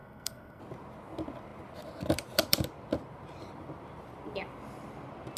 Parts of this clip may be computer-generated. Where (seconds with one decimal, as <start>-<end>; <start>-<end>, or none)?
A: 0.0-0.6